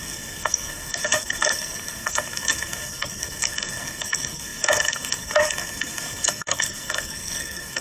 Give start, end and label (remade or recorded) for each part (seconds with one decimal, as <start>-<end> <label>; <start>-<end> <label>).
0.0-7.8 remade